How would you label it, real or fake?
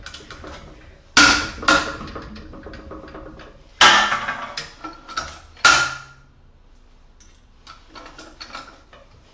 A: real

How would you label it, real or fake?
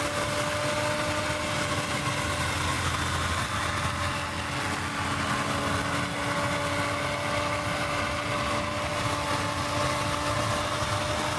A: real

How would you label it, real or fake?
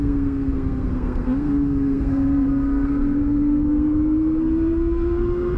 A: fake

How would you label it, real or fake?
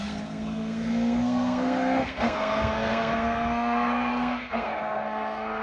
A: fake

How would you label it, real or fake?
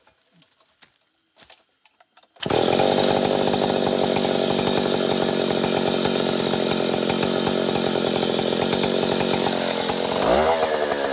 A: real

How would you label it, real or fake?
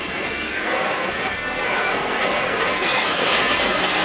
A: fake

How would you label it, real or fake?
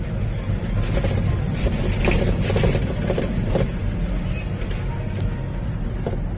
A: real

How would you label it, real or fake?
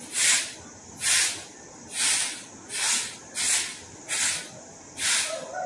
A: real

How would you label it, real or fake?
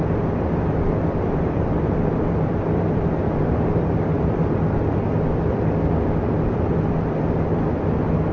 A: real